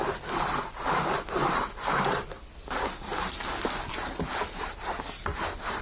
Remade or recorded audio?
recorded